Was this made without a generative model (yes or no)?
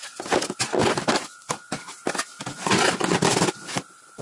yes